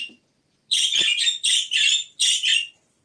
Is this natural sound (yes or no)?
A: yes